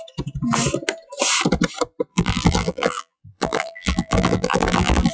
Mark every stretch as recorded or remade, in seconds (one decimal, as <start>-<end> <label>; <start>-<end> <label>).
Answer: 0.0-2.1 recorded; 2.1-5.1 remade